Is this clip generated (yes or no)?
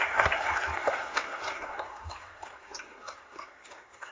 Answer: yes